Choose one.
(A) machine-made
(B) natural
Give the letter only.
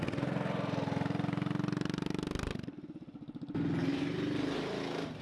B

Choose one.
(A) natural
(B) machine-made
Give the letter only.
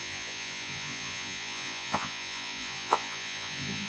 B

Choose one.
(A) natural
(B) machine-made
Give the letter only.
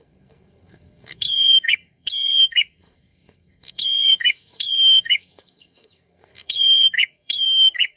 B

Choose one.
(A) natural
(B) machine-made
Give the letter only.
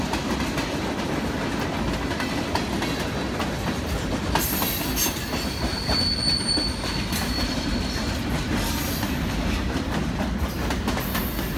A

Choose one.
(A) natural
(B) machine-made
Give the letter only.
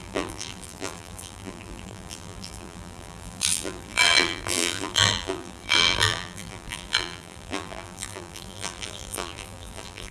B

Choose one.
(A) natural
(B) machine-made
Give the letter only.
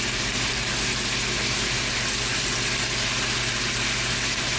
A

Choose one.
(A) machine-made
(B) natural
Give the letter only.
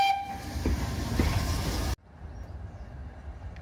B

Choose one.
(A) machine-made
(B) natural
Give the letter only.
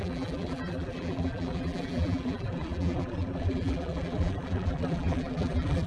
A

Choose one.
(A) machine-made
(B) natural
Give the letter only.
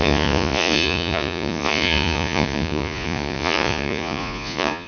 A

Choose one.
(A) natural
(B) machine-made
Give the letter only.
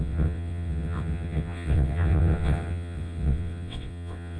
B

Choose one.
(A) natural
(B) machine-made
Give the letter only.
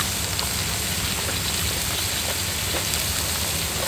A